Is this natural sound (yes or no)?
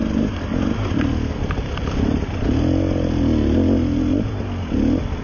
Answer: yes